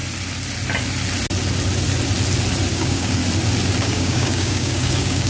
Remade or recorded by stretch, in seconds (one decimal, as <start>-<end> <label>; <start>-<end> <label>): 0.0-2.7 recorded; 2.7-3.2 remade; 3.2-3.8 recorded; 3.8-5.3 remade